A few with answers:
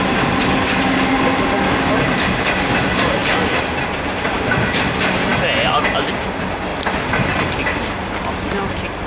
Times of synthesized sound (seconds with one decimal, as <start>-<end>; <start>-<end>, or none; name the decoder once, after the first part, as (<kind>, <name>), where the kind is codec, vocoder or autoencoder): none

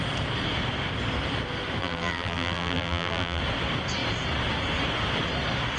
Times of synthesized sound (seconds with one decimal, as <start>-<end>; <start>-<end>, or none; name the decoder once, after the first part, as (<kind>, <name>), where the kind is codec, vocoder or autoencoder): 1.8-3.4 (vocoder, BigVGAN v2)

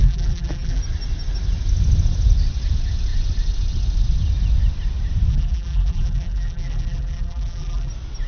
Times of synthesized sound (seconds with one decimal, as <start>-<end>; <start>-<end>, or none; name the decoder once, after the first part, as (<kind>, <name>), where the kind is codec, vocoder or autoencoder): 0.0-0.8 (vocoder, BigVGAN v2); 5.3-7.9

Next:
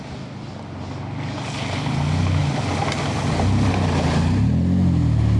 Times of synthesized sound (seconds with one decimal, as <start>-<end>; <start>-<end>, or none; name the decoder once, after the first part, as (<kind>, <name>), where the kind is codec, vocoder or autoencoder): none

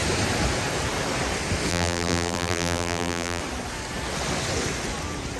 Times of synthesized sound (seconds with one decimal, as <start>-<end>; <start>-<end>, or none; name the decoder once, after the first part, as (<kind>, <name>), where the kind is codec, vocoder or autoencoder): 1.7-3.4 (vocoder, BigVGAN v2)

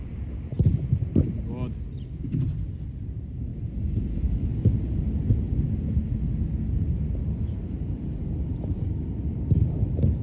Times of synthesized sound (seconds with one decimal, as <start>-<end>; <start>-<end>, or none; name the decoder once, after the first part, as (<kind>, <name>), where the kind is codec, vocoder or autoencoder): 0.5-1.1 (vocoder, BigVGAN v2)

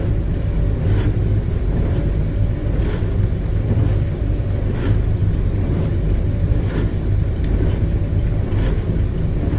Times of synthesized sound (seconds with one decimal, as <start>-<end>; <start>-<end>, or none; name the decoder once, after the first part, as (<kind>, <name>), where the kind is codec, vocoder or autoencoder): 0.0-9.6 (vocoder, BigVGAN v2)